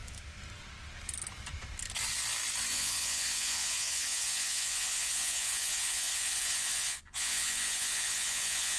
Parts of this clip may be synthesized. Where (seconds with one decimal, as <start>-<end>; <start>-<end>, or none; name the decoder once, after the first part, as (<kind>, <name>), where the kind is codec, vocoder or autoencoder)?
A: 2.7-8.8 (vocoder, Vocos)